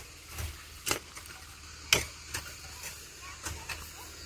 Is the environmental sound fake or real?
real